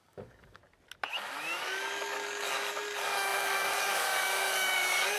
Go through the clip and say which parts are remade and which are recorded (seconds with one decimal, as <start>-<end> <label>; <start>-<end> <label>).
0.0-0.6 remade; 0.6-1.1 recorded; 1.1-5.2 remade